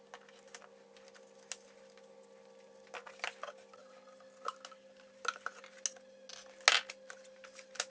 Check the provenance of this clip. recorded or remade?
recorded